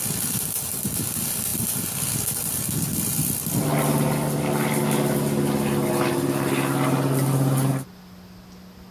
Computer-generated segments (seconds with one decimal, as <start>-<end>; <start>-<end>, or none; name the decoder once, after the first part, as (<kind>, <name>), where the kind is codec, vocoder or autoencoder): none